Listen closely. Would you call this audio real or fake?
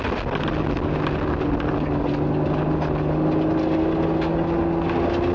real